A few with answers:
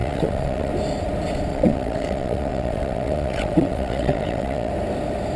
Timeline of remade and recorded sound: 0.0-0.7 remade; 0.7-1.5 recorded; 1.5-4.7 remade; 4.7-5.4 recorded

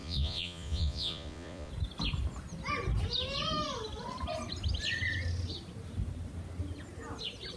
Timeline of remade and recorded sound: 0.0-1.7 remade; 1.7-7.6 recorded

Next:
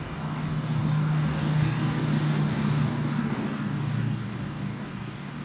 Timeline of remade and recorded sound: 0.0-5.4 remade

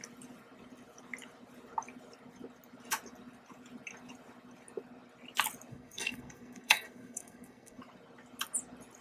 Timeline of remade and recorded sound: 0.0-5.7 recorded; 5.7-7.8 remade; 7.8-9.0 recorded